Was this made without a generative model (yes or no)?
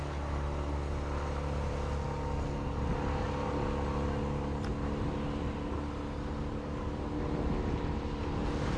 yes